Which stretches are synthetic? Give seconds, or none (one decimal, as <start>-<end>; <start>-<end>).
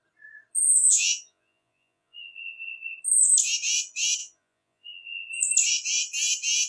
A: 0.6-2.9; 4.2-5.4